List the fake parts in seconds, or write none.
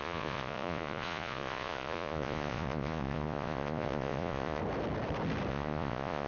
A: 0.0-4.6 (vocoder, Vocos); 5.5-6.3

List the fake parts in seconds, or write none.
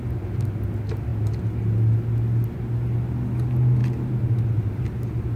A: none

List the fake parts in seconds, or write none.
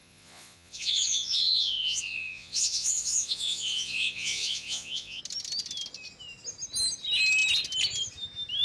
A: 0.0-5.2 (vocoder, Vocos)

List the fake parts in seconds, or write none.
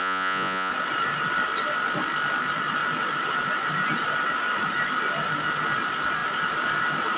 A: 0.0-0.7 (vocoder, Vocos)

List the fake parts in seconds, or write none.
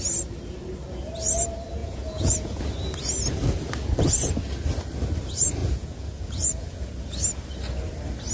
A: 1.8-2.6 (vocoder, Vocos); 5.6-6.9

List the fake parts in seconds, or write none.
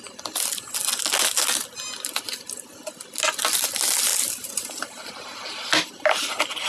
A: none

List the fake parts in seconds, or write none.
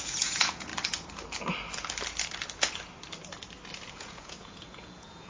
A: 0.0-0.7 (vocoder, Vocos); 3.9-5.3